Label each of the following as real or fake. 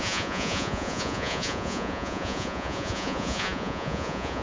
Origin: fake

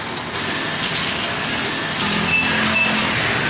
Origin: real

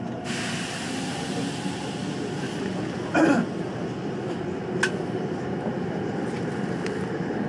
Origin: real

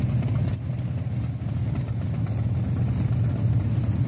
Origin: real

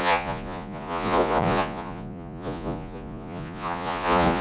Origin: fake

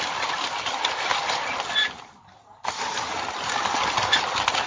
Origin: real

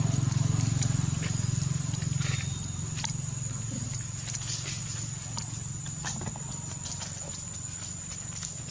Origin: real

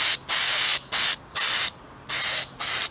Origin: real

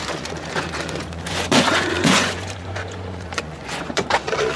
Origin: fake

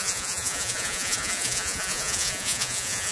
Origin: fake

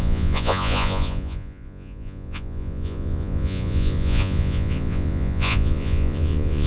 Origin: fake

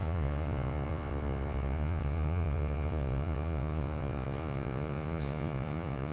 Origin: fake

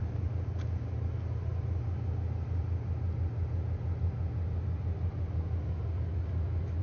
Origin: real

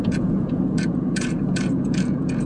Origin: fake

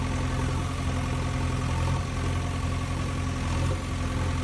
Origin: real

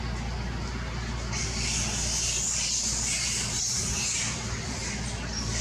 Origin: real